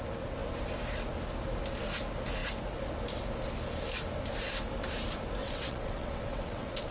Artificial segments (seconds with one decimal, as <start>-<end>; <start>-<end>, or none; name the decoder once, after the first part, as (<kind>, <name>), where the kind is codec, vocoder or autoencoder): 5.4-6.9 (vocoder, WaveNeXt)